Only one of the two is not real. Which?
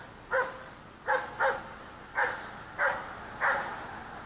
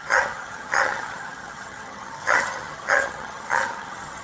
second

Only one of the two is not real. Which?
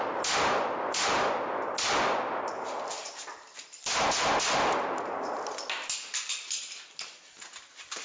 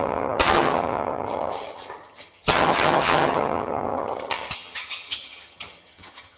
second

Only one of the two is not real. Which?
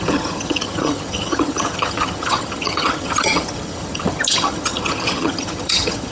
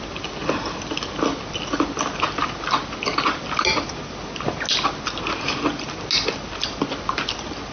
first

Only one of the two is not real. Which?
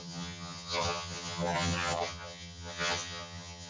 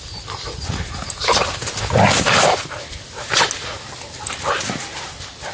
first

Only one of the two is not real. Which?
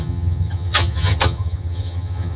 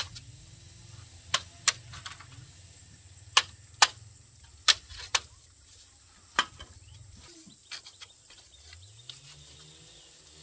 first